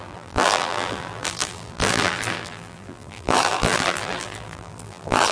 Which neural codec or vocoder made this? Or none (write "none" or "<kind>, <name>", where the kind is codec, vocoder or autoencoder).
vocoder, BigVGAN v2